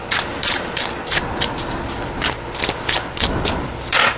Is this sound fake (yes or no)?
yes